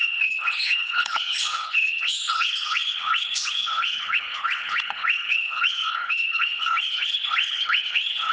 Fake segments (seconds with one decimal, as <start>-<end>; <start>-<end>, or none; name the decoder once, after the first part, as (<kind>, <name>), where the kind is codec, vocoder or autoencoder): 0.0-8.3 (codec, HILCodec)